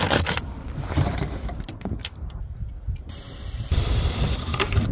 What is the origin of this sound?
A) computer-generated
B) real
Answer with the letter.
A